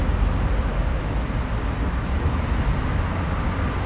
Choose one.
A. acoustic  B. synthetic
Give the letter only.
A